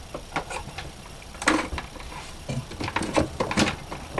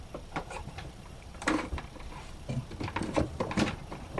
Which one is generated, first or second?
second